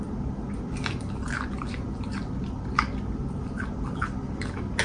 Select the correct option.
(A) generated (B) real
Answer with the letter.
B